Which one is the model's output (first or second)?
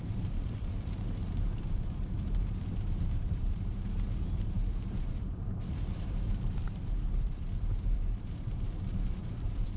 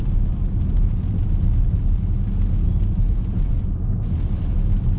first